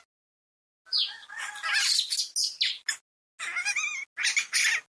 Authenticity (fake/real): real